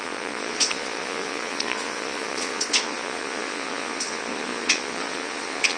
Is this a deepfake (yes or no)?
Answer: yes